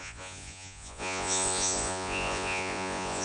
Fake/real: fake